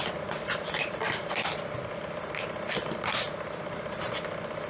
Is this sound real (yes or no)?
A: no